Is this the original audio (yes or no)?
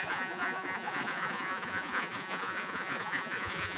no